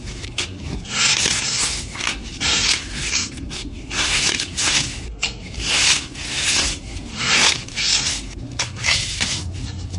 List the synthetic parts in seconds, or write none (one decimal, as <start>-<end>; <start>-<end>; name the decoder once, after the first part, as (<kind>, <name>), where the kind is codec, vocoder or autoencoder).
0.0-10.0 (codec, SNAC)